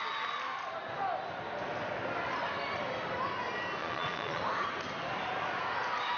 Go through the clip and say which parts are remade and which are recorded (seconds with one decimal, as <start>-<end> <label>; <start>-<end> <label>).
0.0-3.8 recorded; 3.8-4.4 remade; 4.4-6.2 recorded